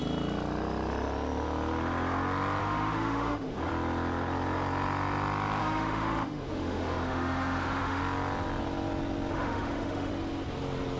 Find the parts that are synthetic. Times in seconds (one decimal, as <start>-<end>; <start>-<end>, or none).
2.6-3.7; 5.6-8.0; 9.3-10.1